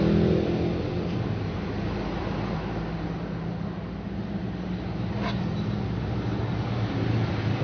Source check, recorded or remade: recorded